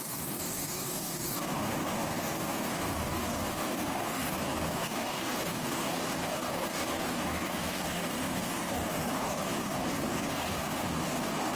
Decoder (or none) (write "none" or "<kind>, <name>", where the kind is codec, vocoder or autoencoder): codec, DAC